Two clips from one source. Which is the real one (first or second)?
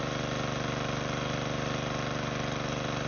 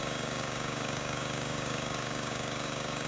first